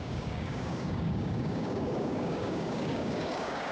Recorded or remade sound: remade